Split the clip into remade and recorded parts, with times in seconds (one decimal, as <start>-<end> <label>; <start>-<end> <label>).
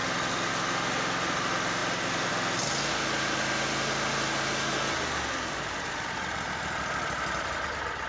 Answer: 0.0-1.8 recorded; 1.8-2.3 remade; 2.3-8.1 recorded